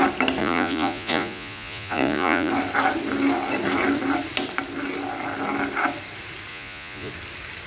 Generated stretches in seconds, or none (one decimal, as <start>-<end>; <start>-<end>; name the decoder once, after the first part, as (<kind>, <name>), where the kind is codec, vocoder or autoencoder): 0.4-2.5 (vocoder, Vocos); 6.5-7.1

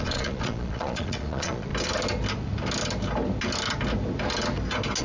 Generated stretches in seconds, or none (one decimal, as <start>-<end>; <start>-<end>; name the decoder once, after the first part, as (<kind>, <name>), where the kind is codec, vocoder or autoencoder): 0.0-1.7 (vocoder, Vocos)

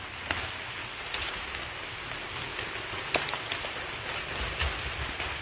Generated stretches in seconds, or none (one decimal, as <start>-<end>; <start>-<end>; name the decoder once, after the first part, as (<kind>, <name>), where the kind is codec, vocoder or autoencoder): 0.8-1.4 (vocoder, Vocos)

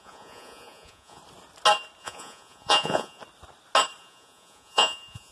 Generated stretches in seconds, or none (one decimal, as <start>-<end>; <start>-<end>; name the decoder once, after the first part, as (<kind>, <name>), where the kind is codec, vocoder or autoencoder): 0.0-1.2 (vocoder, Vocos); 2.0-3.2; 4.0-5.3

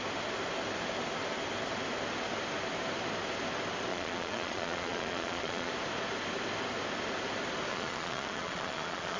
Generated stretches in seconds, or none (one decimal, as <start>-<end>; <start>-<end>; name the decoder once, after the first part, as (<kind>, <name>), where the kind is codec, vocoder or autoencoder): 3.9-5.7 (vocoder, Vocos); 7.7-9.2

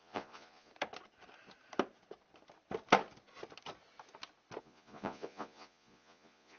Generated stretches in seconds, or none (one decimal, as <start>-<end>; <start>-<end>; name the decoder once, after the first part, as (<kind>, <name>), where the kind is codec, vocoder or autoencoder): 0.0-0.7 (vocoder, Vocos); 4.6-6.6